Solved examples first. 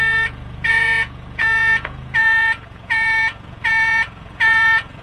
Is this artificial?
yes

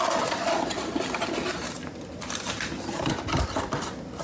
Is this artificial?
no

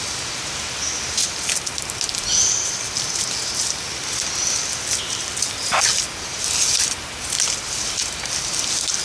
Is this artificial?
no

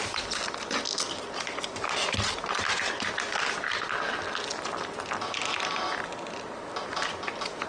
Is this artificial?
no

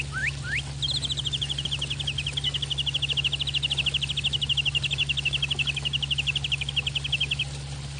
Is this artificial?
no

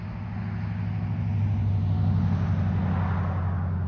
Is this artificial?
no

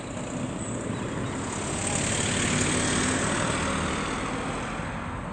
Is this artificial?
no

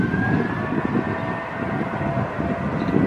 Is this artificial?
no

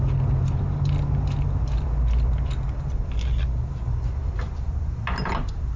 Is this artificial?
no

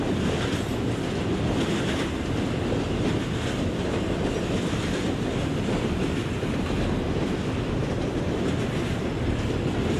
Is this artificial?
no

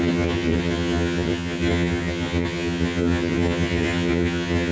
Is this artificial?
yes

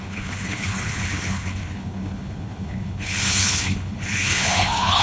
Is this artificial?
yes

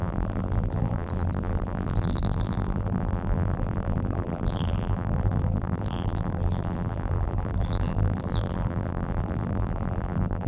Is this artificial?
yes